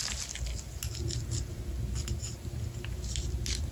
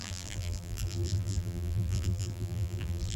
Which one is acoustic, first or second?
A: first